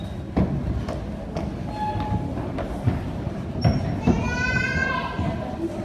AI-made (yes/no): no